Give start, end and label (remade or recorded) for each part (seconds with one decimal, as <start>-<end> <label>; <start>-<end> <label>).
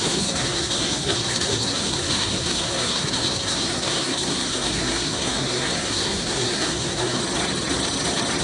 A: 0.0-7.2 remade; 7.2-8.4 recorded